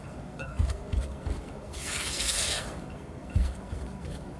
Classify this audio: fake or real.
fake